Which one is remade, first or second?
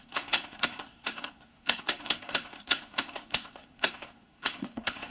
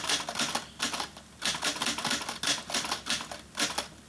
first